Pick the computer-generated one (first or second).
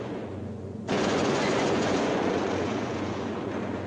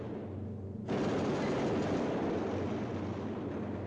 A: first